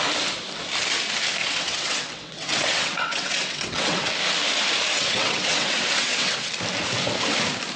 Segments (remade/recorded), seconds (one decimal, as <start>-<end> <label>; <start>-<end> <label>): 0.0-1.4 recorded; 1.4-4.1 remade; 4.1-4.9 recorded; 4.9-6.5 remade; 6.5-7.8 recorded